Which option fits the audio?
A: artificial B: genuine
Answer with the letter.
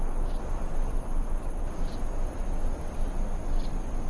B